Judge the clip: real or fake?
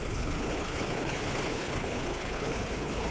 fake